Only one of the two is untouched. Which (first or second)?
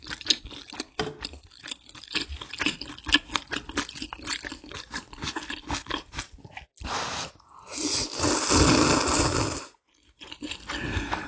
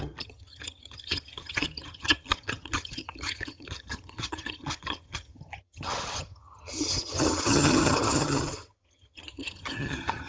first